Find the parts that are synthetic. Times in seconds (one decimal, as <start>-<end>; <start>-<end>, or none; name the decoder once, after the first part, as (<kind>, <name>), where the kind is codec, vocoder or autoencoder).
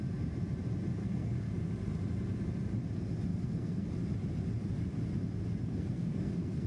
1.0-1.5 (codec, SNAC); 3.3-3.9; 5.6-6.7